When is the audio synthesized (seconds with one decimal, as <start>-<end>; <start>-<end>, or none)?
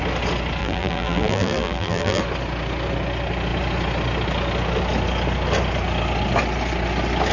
0.6-2.2